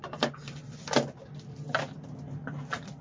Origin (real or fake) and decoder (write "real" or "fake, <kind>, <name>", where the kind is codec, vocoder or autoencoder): real